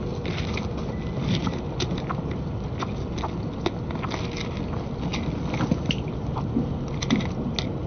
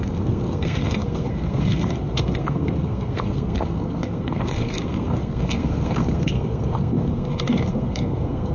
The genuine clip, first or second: first